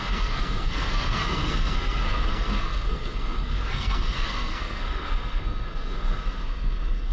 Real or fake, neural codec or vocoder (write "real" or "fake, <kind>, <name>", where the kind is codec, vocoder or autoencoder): fake, codec, SNAC